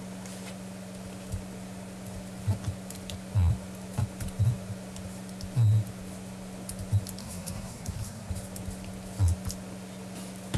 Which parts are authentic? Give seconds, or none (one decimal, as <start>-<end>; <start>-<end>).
0.0-7.2; 8.3-10.6